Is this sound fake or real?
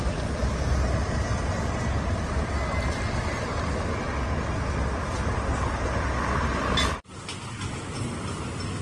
real